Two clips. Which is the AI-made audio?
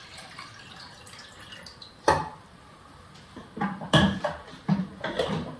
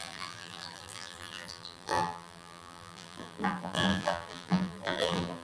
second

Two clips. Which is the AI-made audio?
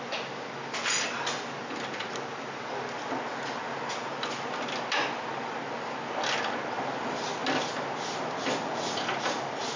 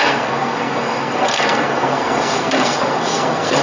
second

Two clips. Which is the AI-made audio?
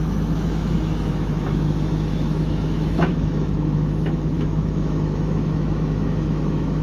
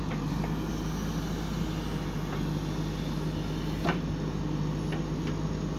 first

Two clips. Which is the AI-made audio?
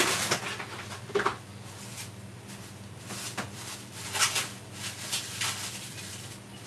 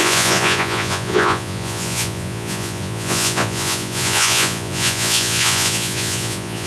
second